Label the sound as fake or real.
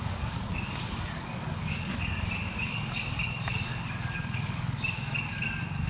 fake